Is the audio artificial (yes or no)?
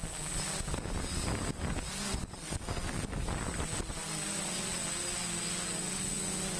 no